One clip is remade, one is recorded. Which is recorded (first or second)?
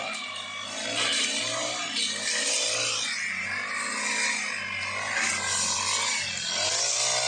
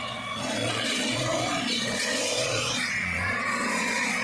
first